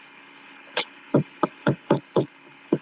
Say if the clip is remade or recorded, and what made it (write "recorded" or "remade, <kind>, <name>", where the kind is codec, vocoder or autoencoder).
remade, codec, HILCodec